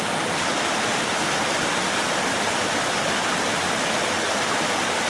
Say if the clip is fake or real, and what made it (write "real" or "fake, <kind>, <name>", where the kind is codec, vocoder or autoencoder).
real